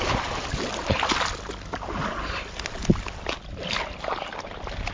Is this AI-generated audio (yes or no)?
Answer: no